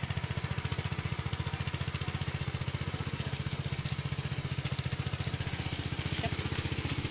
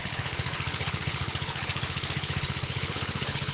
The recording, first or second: first